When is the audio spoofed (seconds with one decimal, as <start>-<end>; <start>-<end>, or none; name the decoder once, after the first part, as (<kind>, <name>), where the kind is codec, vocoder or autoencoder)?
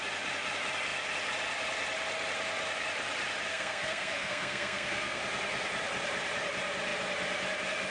3.5-5.2 (codec, SNAC)